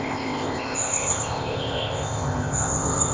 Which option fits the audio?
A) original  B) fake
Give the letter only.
B